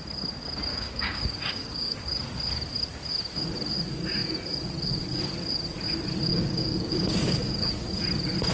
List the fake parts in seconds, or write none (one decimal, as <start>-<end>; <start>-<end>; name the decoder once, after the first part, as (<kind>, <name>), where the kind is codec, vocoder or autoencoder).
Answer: 0.7-2.0 (codec, DAC); 6.3-7.7